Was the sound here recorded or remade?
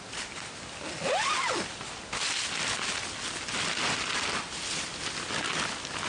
recorded